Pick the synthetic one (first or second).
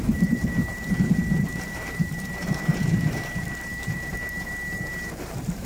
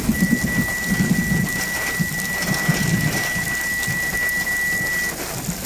first